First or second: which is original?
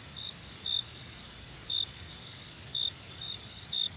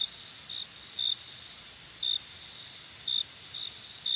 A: second